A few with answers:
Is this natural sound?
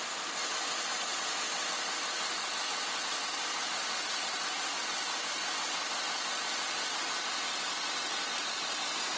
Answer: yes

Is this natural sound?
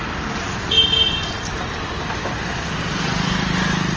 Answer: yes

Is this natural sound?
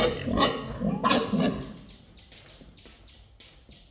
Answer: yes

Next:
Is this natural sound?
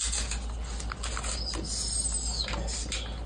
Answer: yes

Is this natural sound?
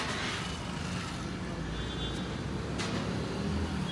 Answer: yes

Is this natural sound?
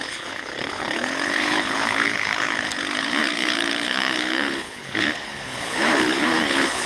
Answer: no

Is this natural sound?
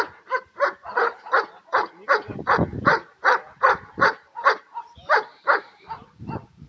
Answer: no